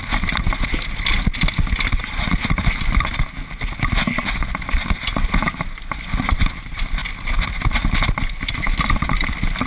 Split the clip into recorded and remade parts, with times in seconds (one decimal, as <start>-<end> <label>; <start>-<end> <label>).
0.0-9.7 recorded